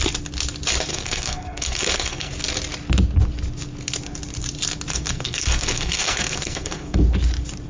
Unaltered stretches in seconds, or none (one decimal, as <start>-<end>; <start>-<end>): 0.0-0.9; 2.3-4.9; 7.0-7.7